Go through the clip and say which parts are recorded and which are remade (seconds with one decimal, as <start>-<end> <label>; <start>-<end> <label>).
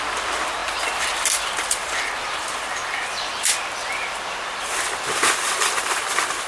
0.0-6.5 remade